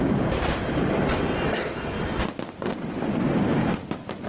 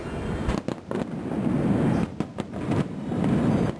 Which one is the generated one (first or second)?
first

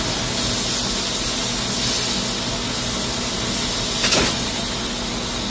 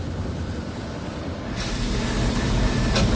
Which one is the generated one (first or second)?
second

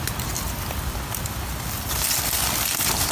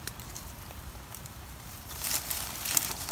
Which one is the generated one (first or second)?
second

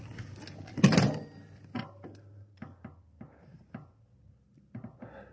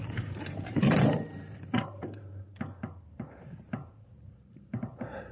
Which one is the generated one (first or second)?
second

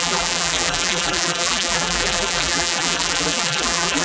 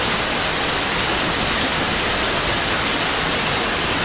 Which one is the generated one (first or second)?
first